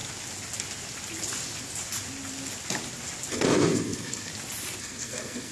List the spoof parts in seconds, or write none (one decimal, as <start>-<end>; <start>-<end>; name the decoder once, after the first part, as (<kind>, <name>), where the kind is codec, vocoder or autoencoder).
3.3-4.3 (codec, SNAC); 4.8-5.5